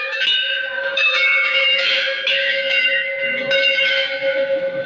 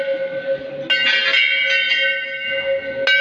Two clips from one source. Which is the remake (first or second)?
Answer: first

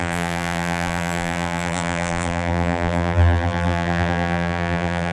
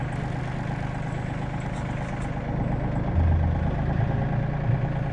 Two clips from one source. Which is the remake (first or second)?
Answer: first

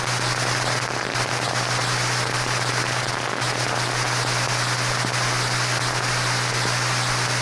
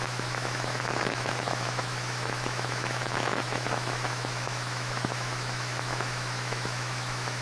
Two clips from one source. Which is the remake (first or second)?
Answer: second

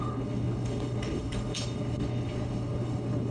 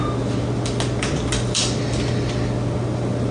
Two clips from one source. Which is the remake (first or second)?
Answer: first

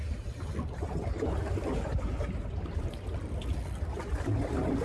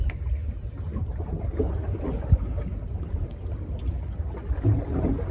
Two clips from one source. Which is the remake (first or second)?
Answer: first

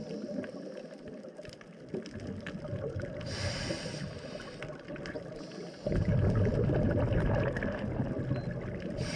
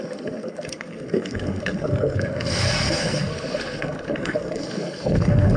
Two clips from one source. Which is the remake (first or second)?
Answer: second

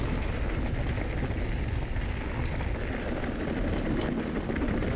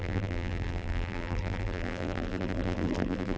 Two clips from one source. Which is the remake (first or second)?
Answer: second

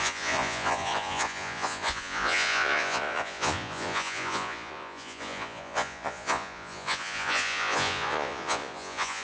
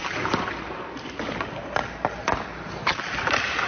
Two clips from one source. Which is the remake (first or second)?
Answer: first